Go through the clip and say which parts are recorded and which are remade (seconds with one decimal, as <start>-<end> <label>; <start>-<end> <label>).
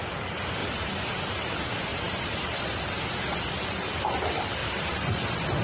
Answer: 0.0-0.6 recorded; 0.6-1.3 remade; 1.3-1.9 recorded; 1.9-4.0 remade; 4.0-5.6 recorded